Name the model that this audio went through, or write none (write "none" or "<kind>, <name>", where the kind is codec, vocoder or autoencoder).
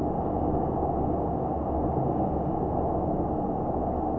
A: none